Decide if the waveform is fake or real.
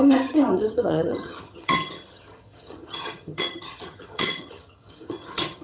fake